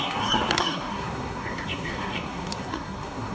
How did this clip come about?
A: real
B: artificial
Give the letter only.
B